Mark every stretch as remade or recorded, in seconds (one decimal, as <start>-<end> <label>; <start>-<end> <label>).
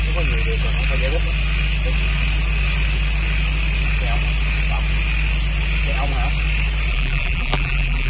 0.0-6.9 recorded; 6.9-8.1 remade